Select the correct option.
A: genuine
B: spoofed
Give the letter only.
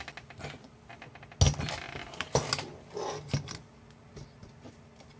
A